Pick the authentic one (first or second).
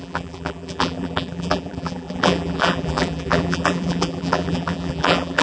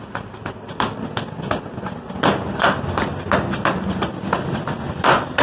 second